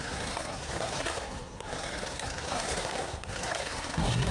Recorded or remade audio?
remade